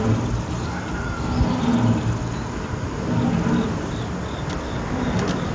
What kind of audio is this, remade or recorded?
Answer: recorded